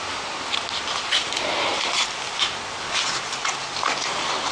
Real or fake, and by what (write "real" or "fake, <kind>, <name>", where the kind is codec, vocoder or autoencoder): real